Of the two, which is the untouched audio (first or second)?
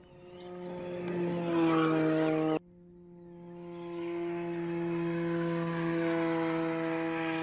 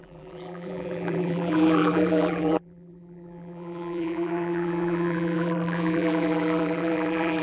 first